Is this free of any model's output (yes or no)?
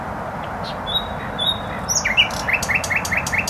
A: yes